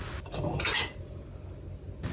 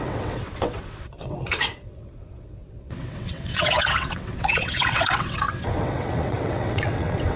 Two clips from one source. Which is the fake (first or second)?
second